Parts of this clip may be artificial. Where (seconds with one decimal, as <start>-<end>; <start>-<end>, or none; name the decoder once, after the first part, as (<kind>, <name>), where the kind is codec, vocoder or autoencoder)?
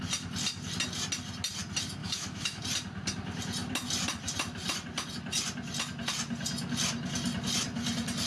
2.0-2.6 (autoencoder, DAC-VAE)